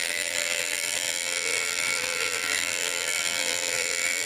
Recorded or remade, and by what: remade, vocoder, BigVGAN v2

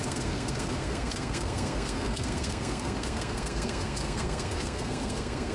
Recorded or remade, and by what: remade, codec, SNAC